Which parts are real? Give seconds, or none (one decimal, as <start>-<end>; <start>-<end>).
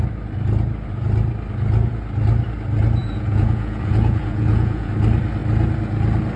0.0-3.0; 4.9-6.4